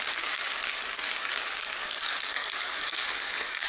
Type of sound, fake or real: fake